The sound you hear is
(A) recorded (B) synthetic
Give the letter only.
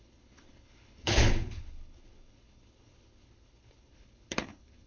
B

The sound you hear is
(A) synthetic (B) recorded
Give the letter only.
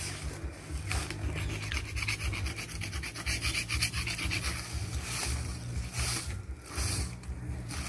B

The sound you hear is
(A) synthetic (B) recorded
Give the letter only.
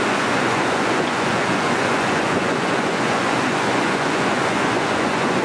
A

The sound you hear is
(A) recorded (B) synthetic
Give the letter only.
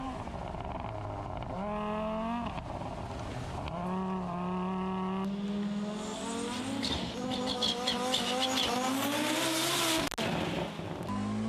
A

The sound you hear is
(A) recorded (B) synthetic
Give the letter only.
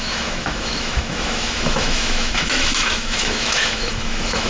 B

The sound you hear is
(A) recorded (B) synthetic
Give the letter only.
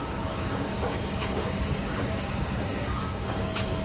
B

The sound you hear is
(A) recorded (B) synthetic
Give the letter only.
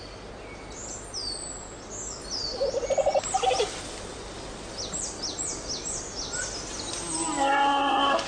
A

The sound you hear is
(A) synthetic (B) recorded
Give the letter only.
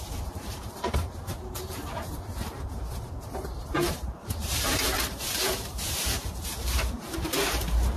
A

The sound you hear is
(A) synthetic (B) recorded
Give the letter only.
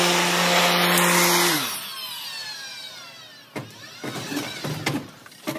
B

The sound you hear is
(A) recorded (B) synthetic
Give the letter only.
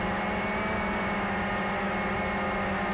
A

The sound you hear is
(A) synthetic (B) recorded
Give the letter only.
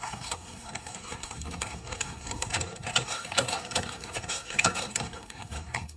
A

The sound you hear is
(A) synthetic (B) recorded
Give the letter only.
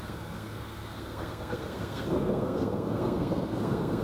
A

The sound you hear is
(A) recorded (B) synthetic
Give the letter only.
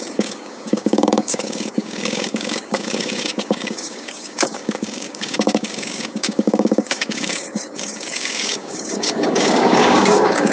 B